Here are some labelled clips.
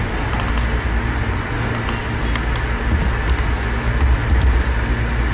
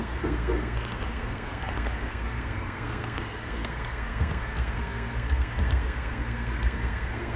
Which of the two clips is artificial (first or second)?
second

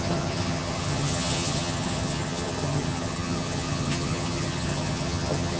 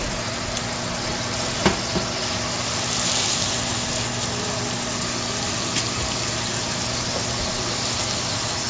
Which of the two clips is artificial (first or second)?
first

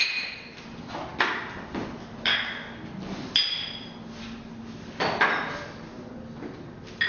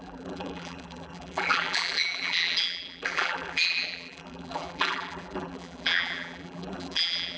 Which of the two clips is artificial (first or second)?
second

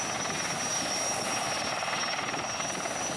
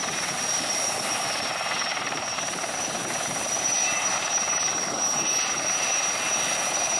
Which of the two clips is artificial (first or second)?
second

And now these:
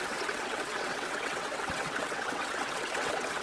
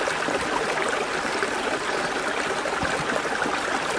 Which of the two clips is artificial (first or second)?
first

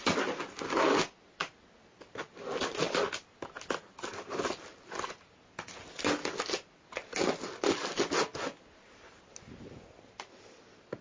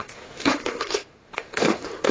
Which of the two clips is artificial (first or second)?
second